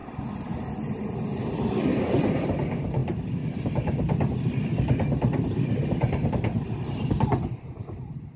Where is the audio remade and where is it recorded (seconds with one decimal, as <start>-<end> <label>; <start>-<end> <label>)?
0.0-1.0 recorded; 1.0-8.4 remade

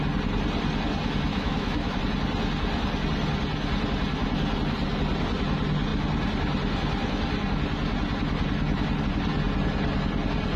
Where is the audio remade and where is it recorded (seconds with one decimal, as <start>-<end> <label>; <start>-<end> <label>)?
0.0-1.3 recorded; 1.3-2.0 remade; 2.0-10.6 recorded

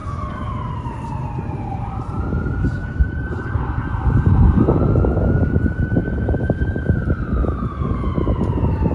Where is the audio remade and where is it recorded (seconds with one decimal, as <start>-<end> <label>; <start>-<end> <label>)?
0.0-2.3 remade; 2.3-2.8 recorded; 2.8-3.6 remade; 3.6-6.0 recorded; 6.0-7.9 remade; 7.9-8.9 recorded

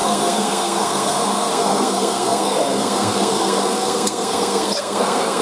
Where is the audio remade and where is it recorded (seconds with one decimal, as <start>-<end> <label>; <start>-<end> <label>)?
0.0-5.4 remade

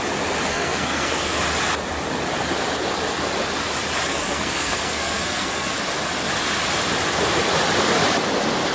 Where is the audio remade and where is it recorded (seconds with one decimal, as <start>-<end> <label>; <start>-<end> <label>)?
0.0-0.5 recorded; 0.5-1.4 remade; 1.4-4.1 recorded; 4.1-5.7 remade; 5.7-8.7 recorded

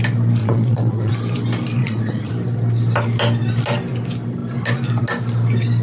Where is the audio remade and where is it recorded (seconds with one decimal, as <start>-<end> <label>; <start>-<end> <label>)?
0.0-0.4 recorded; 0.4-1.1 remade; 1.1-1.8 recorded; 1.8-2.3 remade; 2.3-5.8 recorded

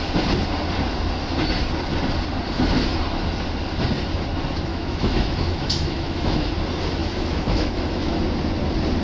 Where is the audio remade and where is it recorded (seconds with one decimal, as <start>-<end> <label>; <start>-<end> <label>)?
0.0-4.7 recorded; 4.7-6.5 remade; 6.5-7.0 recorded; 7.0-8.2 remade; 8.2-9.0 recorded

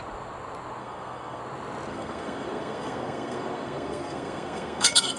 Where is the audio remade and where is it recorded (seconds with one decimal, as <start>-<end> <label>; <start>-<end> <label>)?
0.0-0.8 recorded; 0.8-1.4 remade; 1.4-1.9 recorded; 1.9-5.2 remade